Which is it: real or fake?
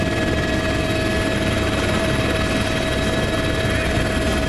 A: real